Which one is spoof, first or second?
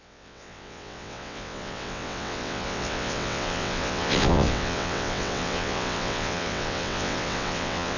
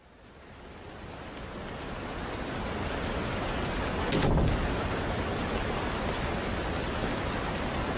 first